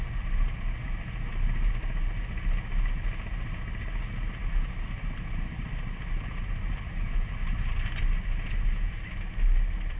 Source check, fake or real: real